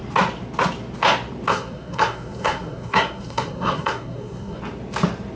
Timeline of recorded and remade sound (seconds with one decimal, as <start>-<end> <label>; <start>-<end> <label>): 0.0-1.5 recorded; 1.5-4.6 remade; 4.6-5.4 recorded